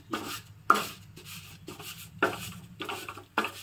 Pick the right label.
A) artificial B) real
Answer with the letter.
B